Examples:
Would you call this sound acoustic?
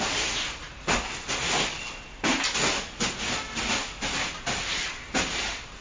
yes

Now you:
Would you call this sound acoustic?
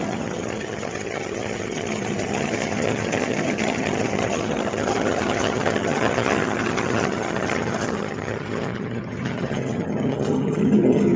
no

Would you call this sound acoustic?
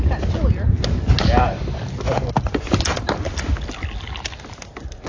yes